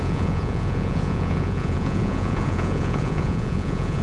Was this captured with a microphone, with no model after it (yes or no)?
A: no